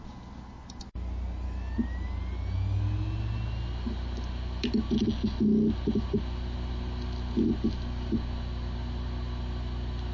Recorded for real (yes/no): yes